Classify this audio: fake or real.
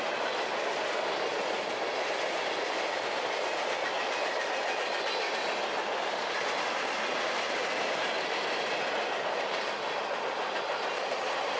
real